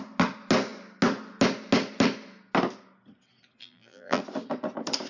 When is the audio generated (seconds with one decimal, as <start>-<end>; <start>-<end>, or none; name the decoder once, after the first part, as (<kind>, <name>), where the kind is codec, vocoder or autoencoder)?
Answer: 3.6-4.2 (vocoder, BigVGAN v2)